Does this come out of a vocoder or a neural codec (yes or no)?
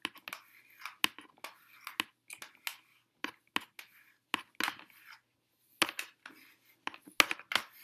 no